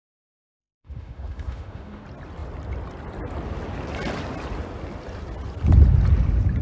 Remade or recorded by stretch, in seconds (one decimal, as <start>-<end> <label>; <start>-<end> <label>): 0.0-0.6 recorded; 0.6-2.0 remade; 2.0-6.6 recorded